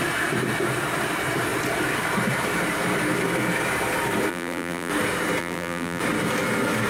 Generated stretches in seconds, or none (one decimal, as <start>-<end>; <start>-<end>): 4.3-4.9; 5.4-6.0